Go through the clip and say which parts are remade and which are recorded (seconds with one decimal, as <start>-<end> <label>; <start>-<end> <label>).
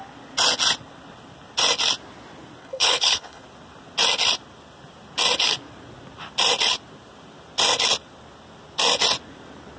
0.0-2.6 recorded; 2.6-3.4 remade; 3.4-9.8 recorded